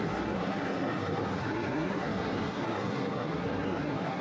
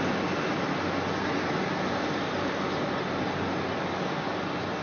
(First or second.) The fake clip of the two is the first